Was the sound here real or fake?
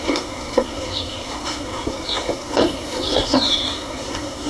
fake